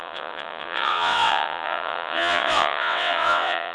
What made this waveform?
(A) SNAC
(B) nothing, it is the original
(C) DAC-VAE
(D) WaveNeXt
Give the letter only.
D